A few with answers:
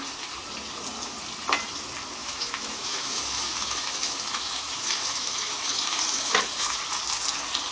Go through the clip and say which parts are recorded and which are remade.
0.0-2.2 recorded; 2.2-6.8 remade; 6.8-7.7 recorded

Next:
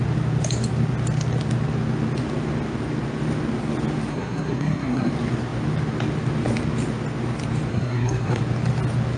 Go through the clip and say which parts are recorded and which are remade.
0.0-4.1 recorded; 4.1-5.1 remade; 5.1-7.7 recorded; 7.7-8.4 remade; 8.4-9.2 recorded

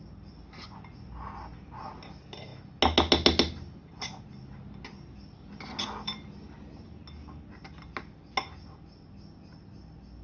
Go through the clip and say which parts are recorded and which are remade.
0.0-10.2 recorded